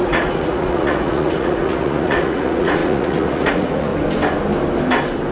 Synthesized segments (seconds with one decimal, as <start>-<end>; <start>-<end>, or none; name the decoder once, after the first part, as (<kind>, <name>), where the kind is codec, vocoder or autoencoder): 0.0-3.9 (vocoder, Vocos)